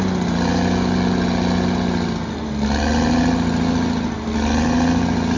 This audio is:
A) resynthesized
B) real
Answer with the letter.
B